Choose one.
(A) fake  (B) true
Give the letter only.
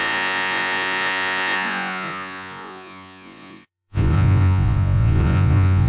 A